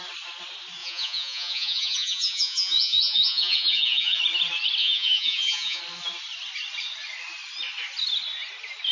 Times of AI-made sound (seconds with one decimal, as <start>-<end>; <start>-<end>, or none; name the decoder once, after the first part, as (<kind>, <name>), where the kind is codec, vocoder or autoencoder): 0.8-4.2 (vocoder, Vocos); 4.8-5.8